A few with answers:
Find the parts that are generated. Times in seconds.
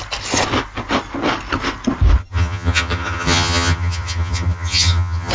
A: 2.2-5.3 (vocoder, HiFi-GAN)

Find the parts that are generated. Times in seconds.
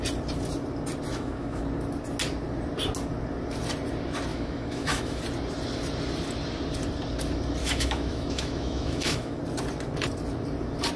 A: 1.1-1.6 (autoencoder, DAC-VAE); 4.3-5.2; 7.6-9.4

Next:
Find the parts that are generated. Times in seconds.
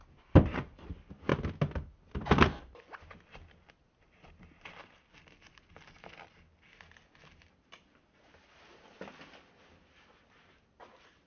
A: none